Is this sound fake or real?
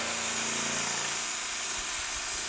real